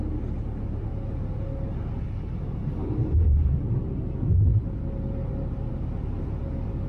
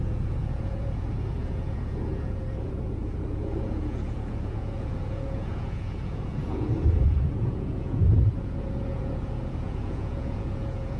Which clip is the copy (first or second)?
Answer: second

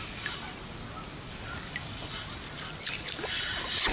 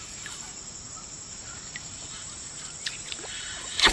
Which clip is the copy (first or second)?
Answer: second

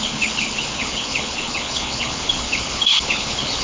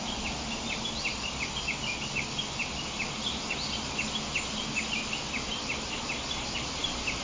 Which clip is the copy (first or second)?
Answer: first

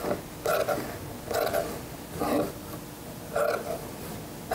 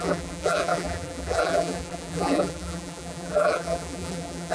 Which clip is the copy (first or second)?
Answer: second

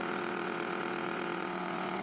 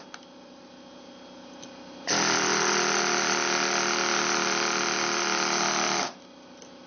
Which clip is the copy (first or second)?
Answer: first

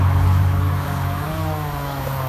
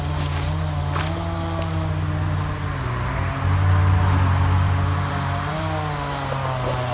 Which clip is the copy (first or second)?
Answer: first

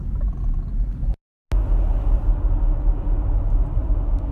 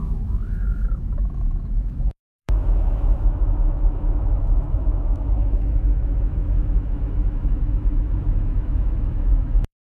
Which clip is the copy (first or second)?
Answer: second